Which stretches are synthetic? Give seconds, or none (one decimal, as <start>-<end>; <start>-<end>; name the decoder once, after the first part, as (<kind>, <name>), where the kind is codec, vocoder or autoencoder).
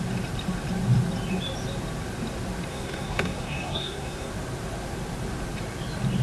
2.7-4.3 (codec, SNAC)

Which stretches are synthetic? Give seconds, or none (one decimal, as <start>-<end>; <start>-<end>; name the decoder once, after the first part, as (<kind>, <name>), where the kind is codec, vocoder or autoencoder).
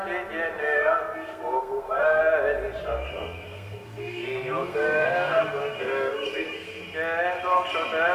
0.6-2.2 (codec, SNAC); 2.8-6.8